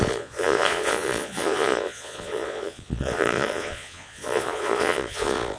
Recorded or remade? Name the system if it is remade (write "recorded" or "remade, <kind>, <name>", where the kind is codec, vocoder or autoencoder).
remade, vocoder, Vocos